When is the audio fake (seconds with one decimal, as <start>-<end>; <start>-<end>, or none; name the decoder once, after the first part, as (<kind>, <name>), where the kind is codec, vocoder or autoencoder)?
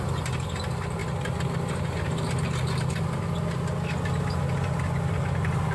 none